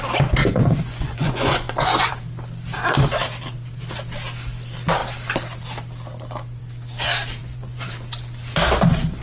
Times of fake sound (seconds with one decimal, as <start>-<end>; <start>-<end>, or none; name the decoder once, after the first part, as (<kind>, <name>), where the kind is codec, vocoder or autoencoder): 0.4-2.1 (vocoder, Vocos); 7.4-7.9